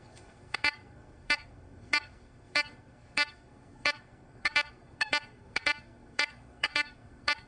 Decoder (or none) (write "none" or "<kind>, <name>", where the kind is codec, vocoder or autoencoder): codec, SNAC